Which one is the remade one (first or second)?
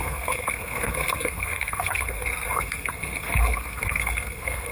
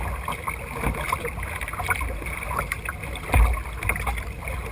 first